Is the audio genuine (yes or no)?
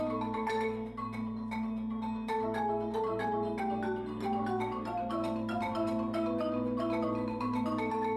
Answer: yes